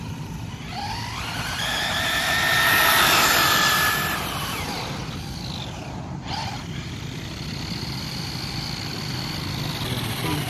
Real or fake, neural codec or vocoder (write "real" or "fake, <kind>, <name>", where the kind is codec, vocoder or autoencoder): real